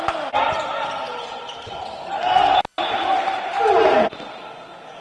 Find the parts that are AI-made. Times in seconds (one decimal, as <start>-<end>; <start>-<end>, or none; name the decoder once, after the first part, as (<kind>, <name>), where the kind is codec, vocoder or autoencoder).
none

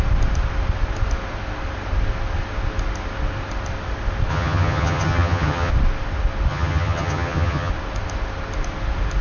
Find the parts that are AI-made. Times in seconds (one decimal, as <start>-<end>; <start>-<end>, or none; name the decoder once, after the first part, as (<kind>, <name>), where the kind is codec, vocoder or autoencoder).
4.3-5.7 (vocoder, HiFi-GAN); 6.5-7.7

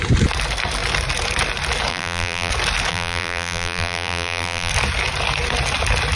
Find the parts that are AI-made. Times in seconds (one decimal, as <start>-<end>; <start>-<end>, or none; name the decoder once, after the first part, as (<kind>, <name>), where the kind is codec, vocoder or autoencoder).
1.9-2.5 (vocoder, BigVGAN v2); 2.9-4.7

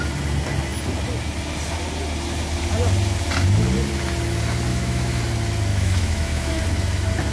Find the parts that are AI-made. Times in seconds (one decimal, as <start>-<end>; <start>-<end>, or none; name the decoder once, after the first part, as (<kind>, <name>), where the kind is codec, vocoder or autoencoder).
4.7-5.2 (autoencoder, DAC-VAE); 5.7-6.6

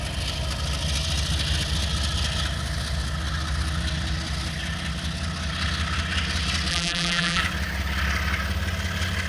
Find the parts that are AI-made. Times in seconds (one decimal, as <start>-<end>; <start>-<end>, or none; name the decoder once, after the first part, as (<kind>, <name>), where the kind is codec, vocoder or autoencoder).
6.7-7.4 (vocoder, BigVGAN v2)

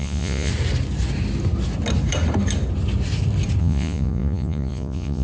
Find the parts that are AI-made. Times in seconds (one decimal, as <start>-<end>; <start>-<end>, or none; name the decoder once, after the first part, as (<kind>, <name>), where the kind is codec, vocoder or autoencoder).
0.0-0.5 (vocoder, Vocos); 3.6-5.2